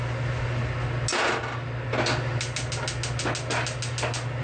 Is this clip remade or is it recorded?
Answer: recorded